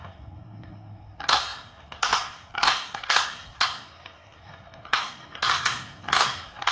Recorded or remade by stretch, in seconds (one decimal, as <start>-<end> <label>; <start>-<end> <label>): 0.0-6.7 remade